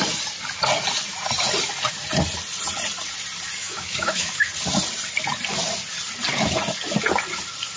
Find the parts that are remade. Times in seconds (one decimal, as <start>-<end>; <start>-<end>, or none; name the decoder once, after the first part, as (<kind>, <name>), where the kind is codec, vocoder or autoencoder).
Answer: 3.6-4.5 (autoencoder, DAC-VAE)

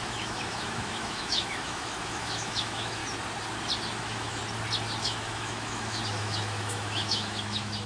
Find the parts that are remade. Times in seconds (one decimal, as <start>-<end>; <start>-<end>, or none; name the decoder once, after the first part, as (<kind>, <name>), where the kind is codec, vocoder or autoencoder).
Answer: 0.0-3.0 (autoencoder, DAC-VAE); 4.0-4.4; 5.0-7.9

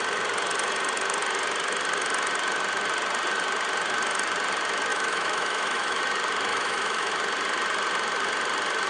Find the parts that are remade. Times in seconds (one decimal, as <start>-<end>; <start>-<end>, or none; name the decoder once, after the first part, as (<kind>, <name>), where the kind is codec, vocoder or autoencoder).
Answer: 4.9-6.0 (autoencoder, DAC-VAE); 6.5-7.1

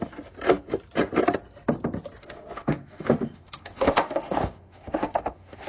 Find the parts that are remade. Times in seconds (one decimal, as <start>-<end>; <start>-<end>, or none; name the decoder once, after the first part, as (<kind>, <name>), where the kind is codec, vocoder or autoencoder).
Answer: 2.2-5.7 (autoencoder, DAC-VAE)

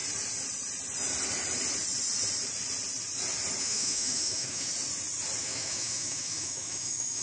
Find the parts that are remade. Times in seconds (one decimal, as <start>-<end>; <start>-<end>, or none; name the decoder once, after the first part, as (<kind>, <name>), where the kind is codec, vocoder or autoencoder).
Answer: 3.6-4.7 (autoencoder, DAC-VAE); 5.4-7.2

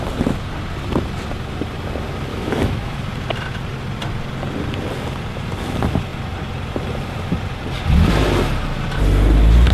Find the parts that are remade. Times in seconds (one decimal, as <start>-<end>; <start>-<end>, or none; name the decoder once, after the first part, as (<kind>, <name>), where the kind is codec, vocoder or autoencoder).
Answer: 2.3-3.0 (autoencoder, DAC-VAE)

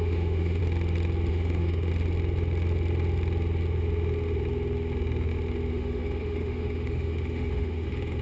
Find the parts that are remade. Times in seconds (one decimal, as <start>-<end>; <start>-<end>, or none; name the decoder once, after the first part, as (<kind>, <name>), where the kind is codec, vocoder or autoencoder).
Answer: 0.0-0.6 (autoencoder, DAC-VAE); 1.3-1.9; 5.7-8.2

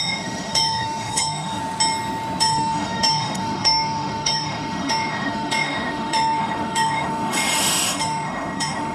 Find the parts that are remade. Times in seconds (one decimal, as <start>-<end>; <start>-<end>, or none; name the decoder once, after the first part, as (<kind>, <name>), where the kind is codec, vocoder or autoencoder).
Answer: 0.0-1.6 (autoencoder, DAC-VAE); 2.4-8.9